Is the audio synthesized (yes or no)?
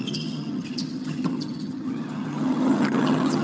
yes